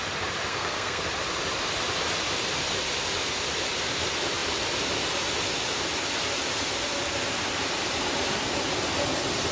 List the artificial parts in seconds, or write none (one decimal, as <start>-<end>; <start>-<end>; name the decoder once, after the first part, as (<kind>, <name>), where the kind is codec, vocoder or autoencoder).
0.5-1.0 (codec, SNAC)